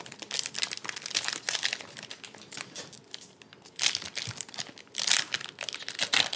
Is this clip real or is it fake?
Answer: real